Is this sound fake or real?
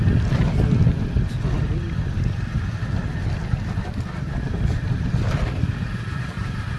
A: real